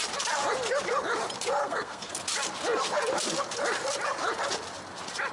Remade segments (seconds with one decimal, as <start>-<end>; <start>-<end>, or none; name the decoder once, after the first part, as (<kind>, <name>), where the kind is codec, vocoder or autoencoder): 1.6-2.1 (codec, SNAC)